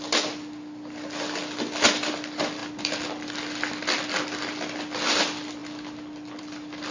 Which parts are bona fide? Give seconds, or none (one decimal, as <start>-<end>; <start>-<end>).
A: 0.0-6.9